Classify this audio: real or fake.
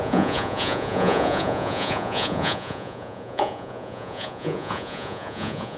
fake